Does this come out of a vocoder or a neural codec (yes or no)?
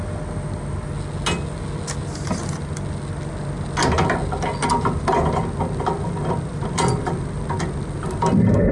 no